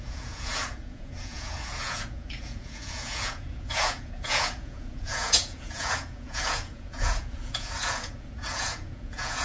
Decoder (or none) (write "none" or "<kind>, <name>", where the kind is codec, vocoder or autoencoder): vocoder, Vocos